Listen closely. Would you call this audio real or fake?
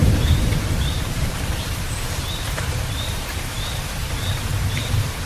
fake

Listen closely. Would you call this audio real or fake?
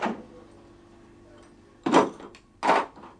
real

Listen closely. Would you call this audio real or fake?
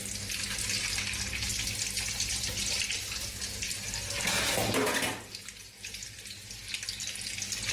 real